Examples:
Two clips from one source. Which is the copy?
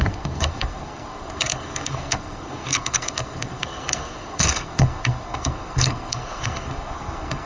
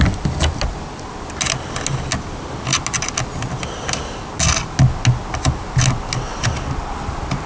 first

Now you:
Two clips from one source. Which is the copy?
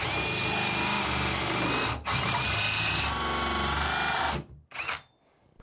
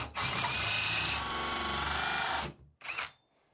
second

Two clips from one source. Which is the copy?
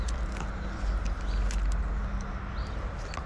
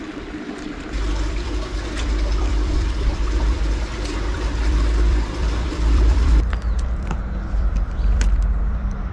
second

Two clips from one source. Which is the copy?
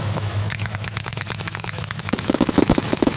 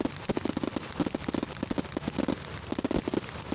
first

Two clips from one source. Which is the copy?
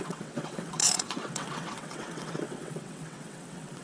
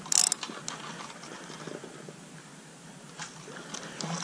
first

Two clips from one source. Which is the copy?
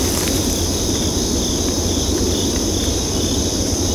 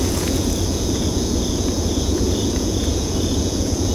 second